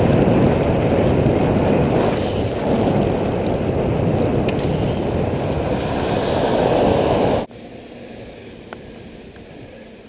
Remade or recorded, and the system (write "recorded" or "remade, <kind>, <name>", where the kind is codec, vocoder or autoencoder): recorded